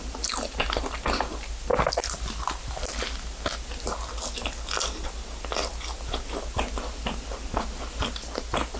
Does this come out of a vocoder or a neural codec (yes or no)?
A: no